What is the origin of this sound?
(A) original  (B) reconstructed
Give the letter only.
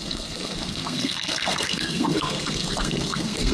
B